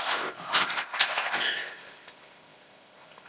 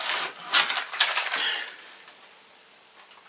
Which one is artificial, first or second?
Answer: first